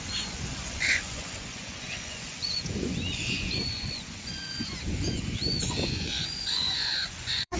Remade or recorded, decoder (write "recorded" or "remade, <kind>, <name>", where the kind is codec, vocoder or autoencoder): remade, vocoder, Vocos